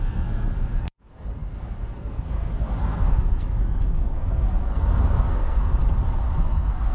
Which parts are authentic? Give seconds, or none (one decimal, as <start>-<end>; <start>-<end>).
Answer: 5.8-6.4